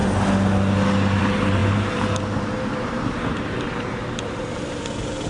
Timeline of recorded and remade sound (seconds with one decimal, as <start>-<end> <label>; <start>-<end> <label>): 0.0-1.2 recorded; 1.2-5.3 remade